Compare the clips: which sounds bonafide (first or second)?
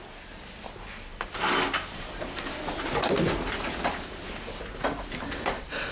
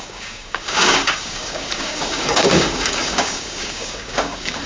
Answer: first